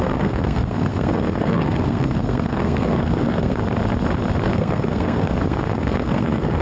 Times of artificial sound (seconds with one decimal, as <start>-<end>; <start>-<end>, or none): 0.0-3.6; 4.4-6.6

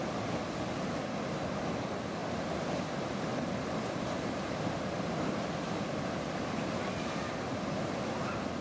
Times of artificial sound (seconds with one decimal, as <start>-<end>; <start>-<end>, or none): 2.2-4.9

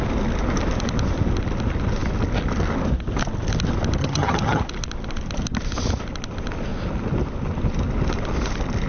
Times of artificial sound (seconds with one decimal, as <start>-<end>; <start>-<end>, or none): 4.0-4.6

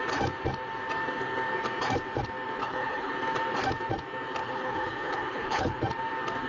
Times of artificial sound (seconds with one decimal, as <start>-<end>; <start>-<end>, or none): 2.6-3.1; 4.4-5.8

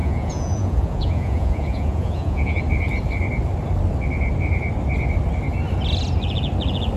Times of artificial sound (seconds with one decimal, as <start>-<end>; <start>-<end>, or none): 0.0-2.6